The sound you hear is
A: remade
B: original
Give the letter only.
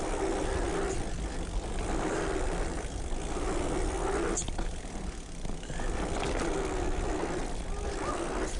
B